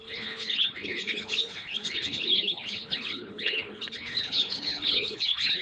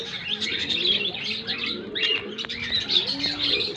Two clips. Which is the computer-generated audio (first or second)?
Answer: first